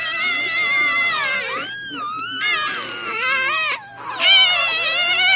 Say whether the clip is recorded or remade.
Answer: recorded